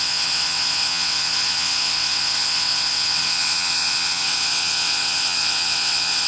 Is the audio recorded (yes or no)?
no